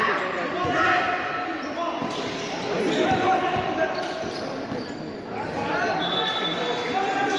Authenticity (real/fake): real